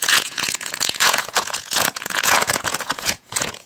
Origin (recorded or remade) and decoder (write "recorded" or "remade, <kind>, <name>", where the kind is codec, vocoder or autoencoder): remade, vocoder, Vocos